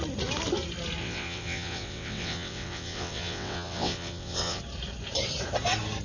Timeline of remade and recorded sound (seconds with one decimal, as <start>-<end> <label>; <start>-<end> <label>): 0.0-1.0 recorded; 1.0-4.6 remade; 4.6-6.0 recorded

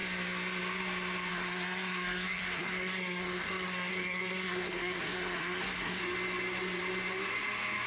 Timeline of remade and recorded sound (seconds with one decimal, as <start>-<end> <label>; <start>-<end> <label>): 0.0-1.3 recorded; 1.3-6.0 remade; 6.0-7.9 recorded

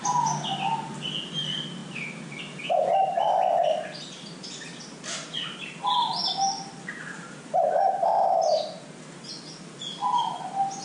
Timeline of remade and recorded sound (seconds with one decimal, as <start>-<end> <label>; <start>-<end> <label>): 0.0-10.8 recorded